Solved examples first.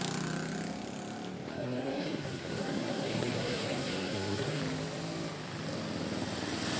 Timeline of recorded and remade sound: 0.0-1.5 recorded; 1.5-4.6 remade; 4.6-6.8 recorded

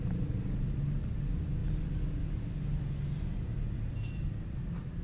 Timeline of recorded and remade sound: 0.0-5.0 recorded

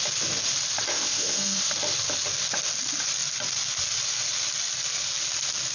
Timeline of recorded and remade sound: 0.0-0.9 recorded; 0.9-1.7 remade; 1.7-5.7 recorded